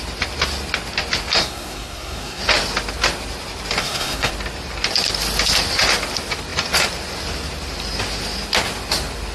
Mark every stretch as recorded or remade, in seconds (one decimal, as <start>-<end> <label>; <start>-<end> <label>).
0.0-1.4 recorded; 1.4-2.4 remade; 2.4-3.8 recorded; 3.8-4.3 remade; 4.3-9.3 recorded